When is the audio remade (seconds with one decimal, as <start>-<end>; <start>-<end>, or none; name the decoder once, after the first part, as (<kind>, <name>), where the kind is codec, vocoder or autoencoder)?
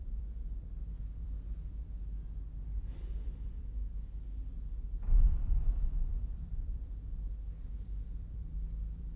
0.0-3.8 (vocoder, BigVGAN v2); 4.4-9.2